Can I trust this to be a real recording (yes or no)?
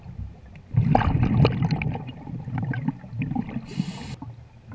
yes